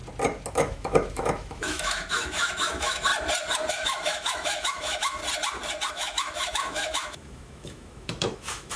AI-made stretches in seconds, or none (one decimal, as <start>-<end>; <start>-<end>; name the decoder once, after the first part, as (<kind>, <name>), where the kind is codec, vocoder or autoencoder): 0.5-3.1 (autoencoder, DAC-VAE); 3.7-5.2; 5.9-8.8

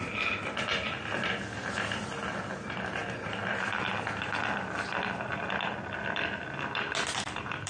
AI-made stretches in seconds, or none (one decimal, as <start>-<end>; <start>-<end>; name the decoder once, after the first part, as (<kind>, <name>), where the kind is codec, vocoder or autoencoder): none

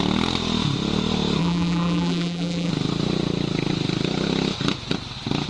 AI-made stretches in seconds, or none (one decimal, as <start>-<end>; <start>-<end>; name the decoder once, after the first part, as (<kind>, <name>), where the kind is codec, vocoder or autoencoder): 1.4-2.7 (vocoder, BigVGAN v2)

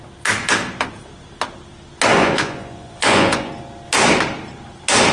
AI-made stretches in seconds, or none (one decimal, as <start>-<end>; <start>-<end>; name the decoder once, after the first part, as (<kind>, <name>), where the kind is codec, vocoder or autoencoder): 2.2-3.5 (vocoder, Vocos)

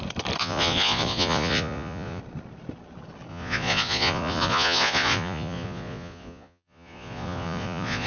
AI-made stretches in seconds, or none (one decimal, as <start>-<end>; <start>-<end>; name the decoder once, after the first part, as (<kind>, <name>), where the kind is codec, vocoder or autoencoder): 0.4-2.2 (vocoder, Vocos); 3.3-8.1